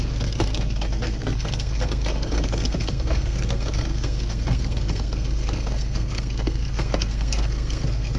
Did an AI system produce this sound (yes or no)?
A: yes